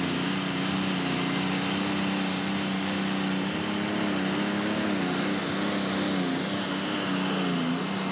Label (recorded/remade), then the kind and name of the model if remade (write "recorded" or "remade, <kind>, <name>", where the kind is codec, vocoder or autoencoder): recorded